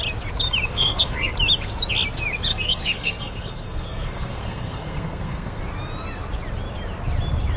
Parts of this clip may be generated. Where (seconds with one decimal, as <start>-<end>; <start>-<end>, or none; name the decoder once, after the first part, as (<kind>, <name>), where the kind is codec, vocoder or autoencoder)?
0.7-1.3 (codec, SNAC); 2.5-5.6